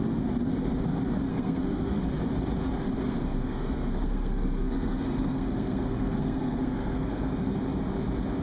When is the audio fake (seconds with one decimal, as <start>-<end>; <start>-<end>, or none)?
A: 1.3-2.0; 3.0-7.5